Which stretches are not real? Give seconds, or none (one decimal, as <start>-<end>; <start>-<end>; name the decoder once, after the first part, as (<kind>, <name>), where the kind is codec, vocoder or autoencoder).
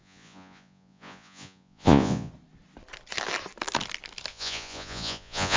0.0-2.3 (vocoder, Vocos); 4.3-5.6